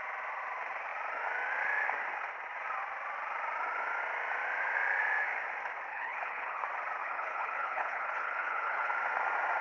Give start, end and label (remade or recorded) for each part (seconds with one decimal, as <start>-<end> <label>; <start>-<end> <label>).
0.0-5.9 recorded; 5.9-6.6 remade; 6.6-7.0 recorded; 7.0-8.9 remade; 8.9-9.6 recorded